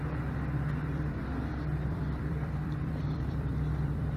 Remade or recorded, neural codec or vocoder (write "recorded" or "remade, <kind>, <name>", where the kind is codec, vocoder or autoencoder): remade, vocoder, BigVGAN v2